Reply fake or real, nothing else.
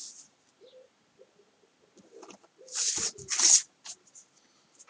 real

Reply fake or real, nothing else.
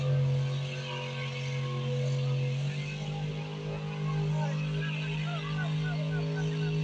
real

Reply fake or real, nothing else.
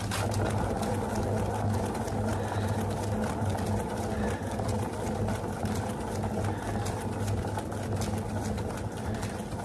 real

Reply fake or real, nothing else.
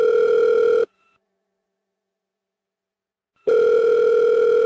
fake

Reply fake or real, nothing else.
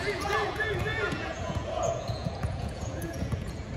fake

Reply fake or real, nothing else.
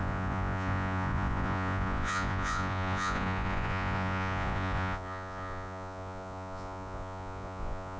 fake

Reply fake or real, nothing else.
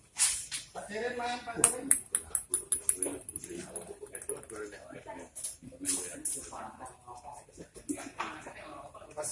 real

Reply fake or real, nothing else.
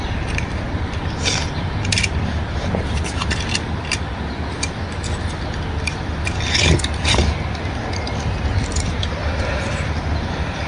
real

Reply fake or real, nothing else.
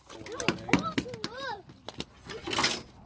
real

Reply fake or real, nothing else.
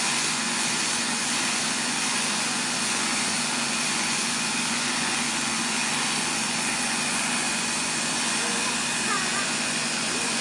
fake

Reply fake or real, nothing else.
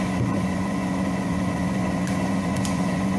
fake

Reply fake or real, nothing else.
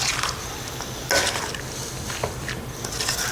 real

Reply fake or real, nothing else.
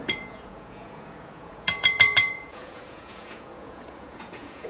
fake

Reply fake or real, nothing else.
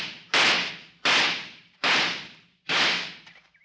real